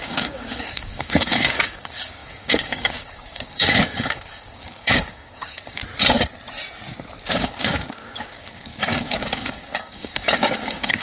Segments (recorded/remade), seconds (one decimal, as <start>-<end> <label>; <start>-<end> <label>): 0.0-5.8 remade; 5.8-7.3 recorded; 7.3-11.0 remade